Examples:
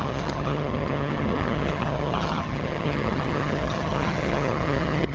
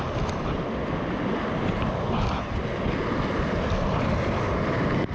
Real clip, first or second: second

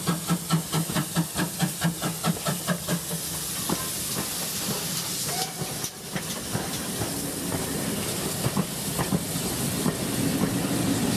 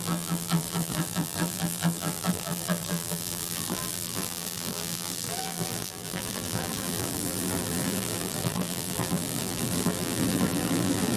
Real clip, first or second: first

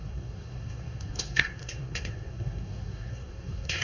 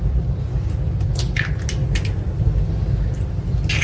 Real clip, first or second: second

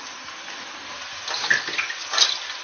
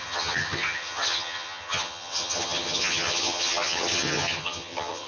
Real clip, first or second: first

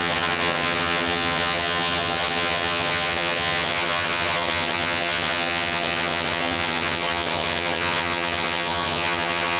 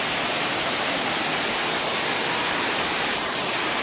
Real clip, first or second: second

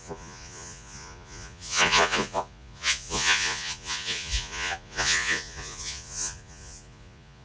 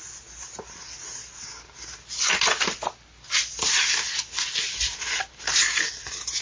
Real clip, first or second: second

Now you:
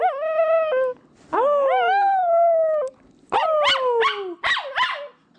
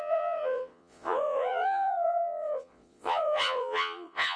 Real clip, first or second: first